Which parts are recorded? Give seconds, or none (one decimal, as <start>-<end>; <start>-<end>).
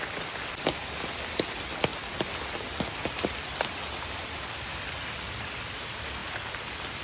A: 1.9-4.1